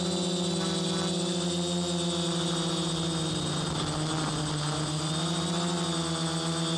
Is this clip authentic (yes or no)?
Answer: yes